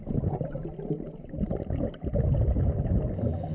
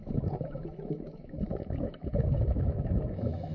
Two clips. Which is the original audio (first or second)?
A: first